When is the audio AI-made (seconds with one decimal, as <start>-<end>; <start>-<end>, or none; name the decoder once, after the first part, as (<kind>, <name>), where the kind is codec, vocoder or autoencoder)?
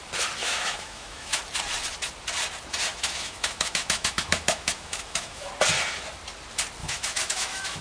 0.4-1.4 (autoencoder, DAC-VAE); 2.9-5.5; 6.8-7.8